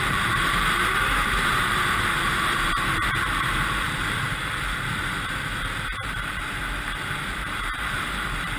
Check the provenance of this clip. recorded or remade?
remade